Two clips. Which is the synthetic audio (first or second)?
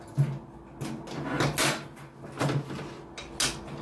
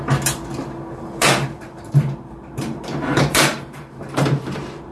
second